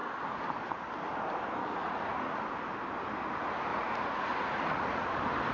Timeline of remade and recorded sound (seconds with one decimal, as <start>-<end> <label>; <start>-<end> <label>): 0.0-1.6 recorded; 1.6-2.6 remade; 2.6-3.7 recorded; 3.7-5.1 remade; 5.1-5.5 recorded